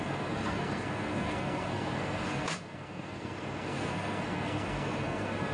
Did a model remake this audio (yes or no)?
yes